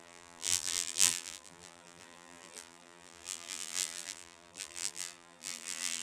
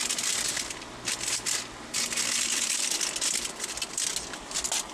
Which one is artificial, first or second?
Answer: first